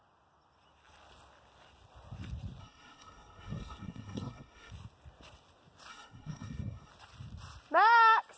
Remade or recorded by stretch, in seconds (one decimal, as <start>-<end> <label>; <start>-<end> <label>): 0.0-2.6 recorded; 2.6-4.7 remade; 4.7-5.9 recorded; 5.9-6.9 remade; 6.9-8.4 recorded